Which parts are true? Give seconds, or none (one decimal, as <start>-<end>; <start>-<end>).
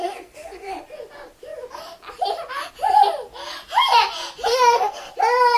0.7-4.5; 5.1-5.6